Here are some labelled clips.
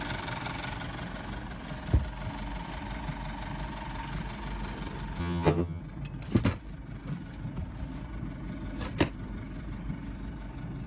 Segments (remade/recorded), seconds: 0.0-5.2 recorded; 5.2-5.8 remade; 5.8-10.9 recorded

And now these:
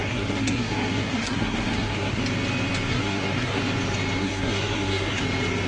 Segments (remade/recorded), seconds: 0.0-2.2 remade; 2.2-2.9 recorded; 2.9-3.6 remade; 3.6-4.2 recorded; 4.2-5.2 remade; 5.2-5.7 recorded

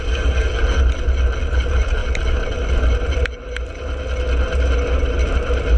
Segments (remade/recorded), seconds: 0.0-5.8 recorded

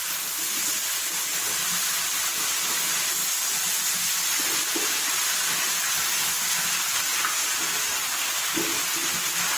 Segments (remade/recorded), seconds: 0.0-9.6 recorded

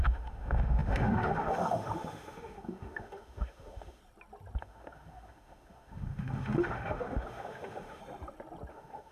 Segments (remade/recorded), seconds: 0.0-4.0 remade; 4.0-4.6 recorded; 4.6-8.0 remade; 8.0-8.7 recorded; 8.7-9.1 remade

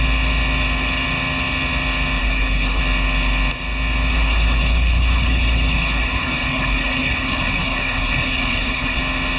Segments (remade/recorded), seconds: 0.0-2.2 recorded; 2.2-2.8 remade; 2.8-4.1 recorded; 4.1-9.0 remade; 9.0-9.4 recorded